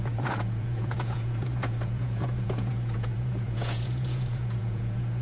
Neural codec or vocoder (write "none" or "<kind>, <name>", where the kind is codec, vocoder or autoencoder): vocoder, Vocos